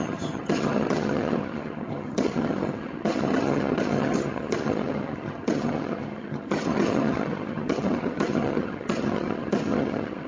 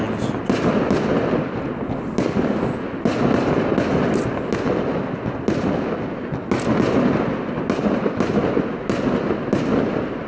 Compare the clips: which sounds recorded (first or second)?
second